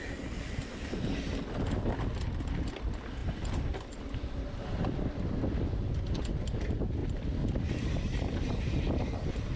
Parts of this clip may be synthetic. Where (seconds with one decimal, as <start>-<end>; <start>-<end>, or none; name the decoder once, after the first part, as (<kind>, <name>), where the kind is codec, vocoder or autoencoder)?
3.2-5.2 (vocoder, BigVGAN v2); 7.0-7.7